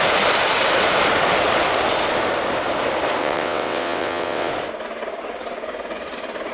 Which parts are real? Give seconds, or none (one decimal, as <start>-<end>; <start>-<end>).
0.0-3.2; 4.5-6.5